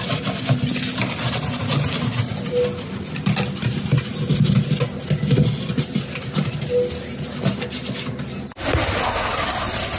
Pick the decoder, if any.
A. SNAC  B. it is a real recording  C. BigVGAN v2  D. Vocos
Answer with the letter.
B